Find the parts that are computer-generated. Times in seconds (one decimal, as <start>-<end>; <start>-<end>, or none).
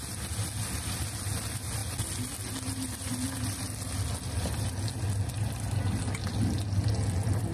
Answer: none